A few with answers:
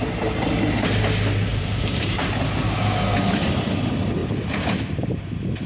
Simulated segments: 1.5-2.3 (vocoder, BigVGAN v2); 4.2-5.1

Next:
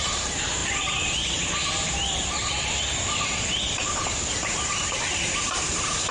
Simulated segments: 0.0-0.6 (vocoder, BigVGAN v2); 4.3-6.1

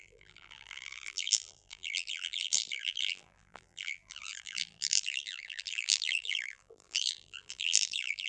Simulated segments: 0.0-8.3 (vocoder, BigVGAN v2)

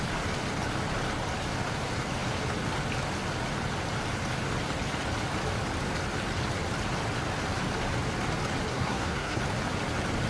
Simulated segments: 8.7-9.4 (codec, SNAC)

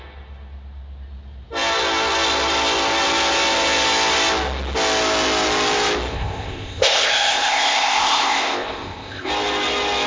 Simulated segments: 6.1-9.3 (codec, ZipCodec)